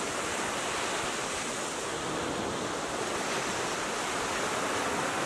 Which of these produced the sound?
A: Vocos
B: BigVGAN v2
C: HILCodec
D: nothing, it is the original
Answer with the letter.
D